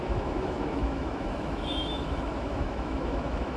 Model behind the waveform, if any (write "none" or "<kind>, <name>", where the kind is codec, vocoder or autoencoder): autoencoder, DAC-VAE